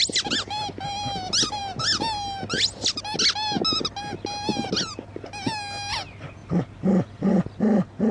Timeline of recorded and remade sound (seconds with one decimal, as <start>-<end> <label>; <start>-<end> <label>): 0.0-8.1 recorded